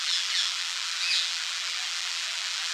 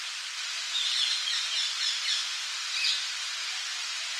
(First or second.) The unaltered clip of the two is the second